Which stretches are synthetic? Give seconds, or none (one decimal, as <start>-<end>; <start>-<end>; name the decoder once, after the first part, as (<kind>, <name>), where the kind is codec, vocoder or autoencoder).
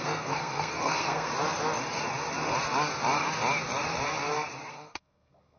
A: 0.0-1.3 (codec, SNAC); 4.7-5.6